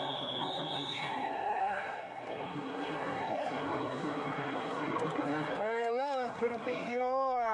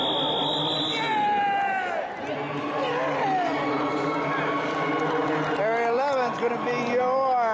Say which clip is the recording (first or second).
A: second